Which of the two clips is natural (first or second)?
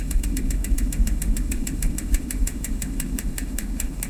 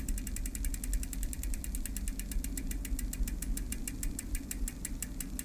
second